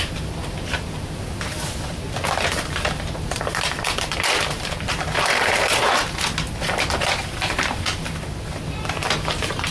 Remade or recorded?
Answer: remade